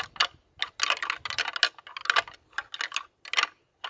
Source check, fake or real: real